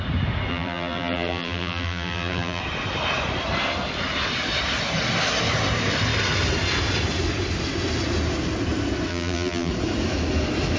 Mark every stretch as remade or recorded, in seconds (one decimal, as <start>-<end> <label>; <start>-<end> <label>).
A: 0.0-0.5 recorded; 0.5-2.6 remade; 2.6-9.1 recorded; 9.1-9.7 remade; 9.7-10.8 recorded